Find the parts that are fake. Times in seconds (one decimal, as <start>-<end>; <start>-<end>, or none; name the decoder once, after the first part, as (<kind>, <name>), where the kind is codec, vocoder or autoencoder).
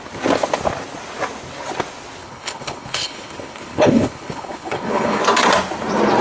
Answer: 2.2-5.2 (codec, HILCodec)